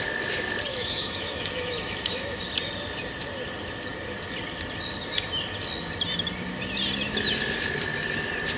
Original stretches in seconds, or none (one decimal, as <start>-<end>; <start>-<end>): 0.0-0.7; 2.4-8.6